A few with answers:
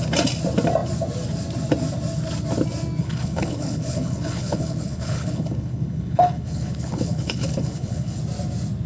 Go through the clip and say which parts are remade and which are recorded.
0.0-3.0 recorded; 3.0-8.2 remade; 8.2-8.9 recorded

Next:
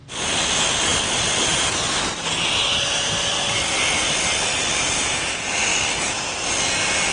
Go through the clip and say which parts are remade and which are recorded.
0.0-7.1 recorded